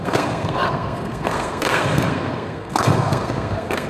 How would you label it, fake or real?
fake